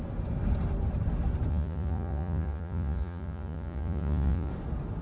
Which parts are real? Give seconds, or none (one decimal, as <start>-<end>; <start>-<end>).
0.0-1.5; 4.5-5.0